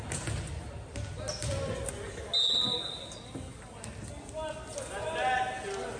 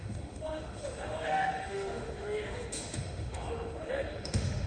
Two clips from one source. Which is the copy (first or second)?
second